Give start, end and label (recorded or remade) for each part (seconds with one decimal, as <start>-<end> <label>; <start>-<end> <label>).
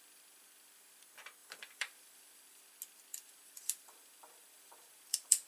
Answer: 0.0-1.4 recorded; 1.4-2.6 remade; 2.6-3.1 recorded; 3.1-5.5 remade